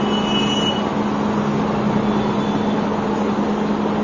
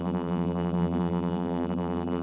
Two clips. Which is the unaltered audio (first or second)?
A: first